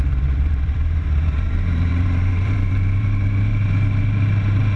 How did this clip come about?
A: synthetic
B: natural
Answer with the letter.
A